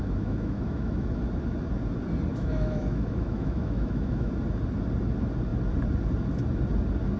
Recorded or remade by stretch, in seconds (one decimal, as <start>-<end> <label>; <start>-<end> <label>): 0.0-1.2 remade; 1.2-2.3 recorded; 2.3-4.3 remade; 4.3-7.2 recorded